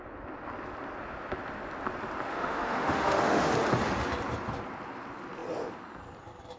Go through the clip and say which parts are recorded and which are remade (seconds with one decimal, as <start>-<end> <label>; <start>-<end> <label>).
0.0-2.3 recorded; 2.3-3.5 remade; 3.5-6.6 recorded